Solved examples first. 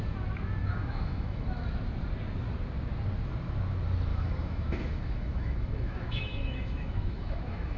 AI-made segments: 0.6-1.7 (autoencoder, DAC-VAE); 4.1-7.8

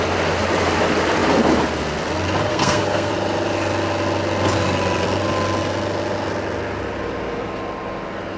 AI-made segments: 2.5-3.1 (codec, SNAC)

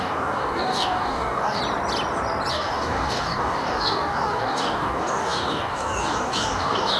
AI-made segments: 0.0-1.6 (codec, DAC); 2.5-7.0

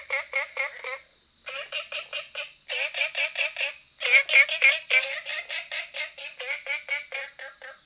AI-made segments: none

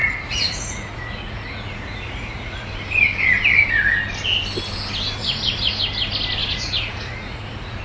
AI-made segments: 0.0-2.7 (vocoder, Vocos); 5.2-5.8; 6.4-7.8